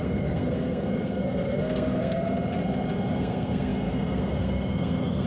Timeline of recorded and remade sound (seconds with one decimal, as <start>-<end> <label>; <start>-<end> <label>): 0.0-2.2 remade; 2.2-3.1 recorded; 3.1-5.3 remade